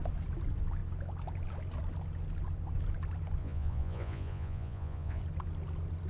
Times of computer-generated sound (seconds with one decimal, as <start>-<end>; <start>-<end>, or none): 3.4-5.2